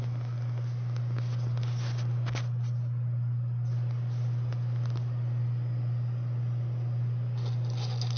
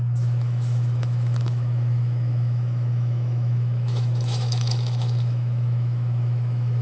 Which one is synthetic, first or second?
second